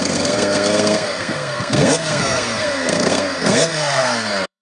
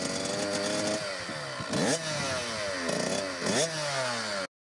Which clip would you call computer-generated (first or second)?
first